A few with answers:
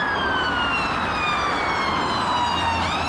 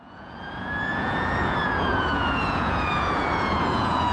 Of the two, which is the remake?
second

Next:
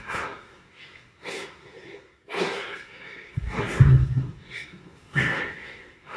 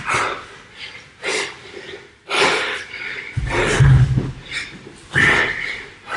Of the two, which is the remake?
first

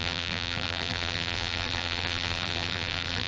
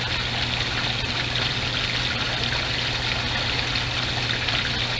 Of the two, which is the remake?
first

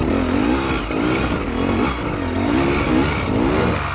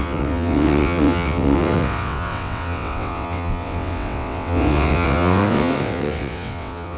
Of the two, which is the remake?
second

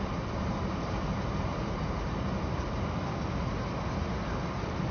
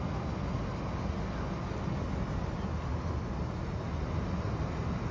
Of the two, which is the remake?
first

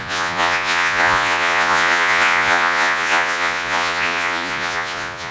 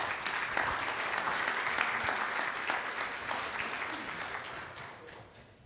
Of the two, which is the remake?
first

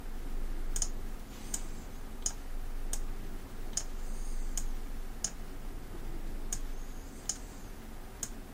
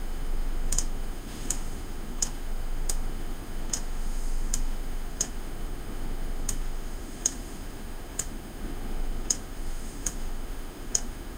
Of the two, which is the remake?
second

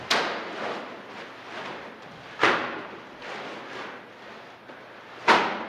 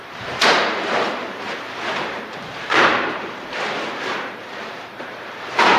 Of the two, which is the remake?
second